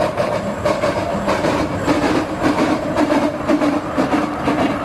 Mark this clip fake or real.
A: fake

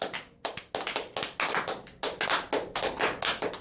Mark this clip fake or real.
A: real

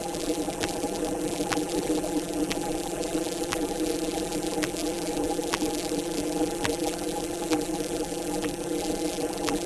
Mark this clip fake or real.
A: fake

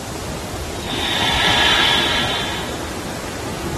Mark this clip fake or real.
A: real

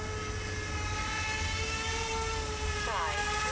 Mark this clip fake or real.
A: real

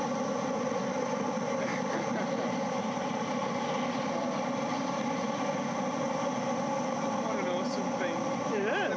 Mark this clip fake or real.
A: fake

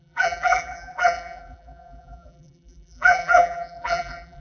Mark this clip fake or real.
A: fake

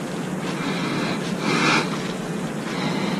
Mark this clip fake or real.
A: real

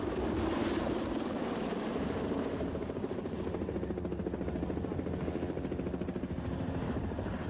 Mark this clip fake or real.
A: fake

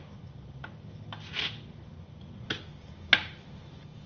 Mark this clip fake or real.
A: real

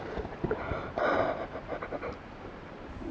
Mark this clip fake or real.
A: real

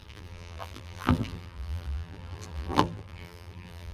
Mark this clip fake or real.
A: fake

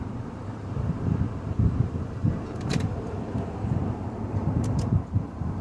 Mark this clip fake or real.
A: fake